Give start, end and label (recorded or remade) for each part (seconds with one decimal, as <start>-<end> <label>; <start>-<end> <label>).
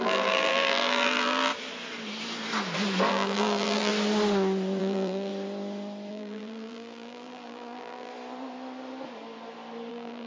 0.0-1.5 remade; 1.5-3.1 recorded; 3.1-3.9 remade; 3.9-4.8 recorded; 4.8-5.3 remade; 5.3-6.1 recorded; 6.1-8.1 remade; 8.1-9.9 recorded; 9.9-10.3 remade